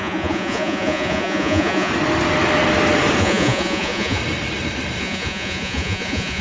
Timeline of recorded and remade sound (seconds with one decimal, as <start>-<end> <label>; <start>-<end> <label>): 0.0-1.9 remade; 1.9-3.2 recorded; 3.2-4.2 remade; 4.2-5.0 recorded; 5.0-6.4 remade